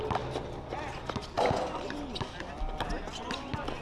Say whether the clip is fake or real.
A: real